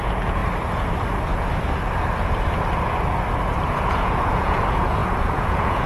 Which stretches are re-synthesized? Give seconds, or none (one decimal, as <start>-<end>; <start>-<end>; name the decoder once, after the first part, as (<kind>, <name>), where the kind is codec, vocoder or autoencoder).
0.0-0.4 (vocoder, Vocos); 3.9-5.9